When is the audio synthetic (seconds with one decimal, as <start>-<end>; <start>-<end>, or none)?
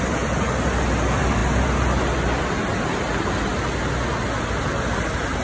none